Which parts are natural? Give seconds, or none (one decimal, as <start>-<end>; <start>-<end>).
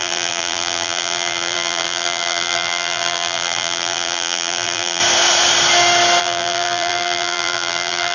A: 5.0-6.2